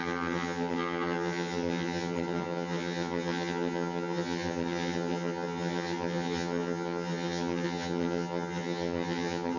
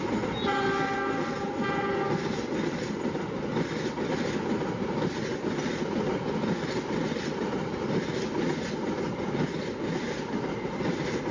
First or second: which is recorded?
second